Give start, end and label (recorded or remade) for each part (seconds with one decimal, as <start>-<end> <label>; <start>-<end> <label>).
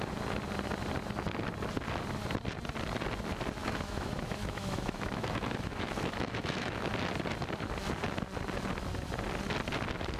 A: 0.0-3.6 recorded; 3.6-6.9 remade; 6.9-10.2 recorded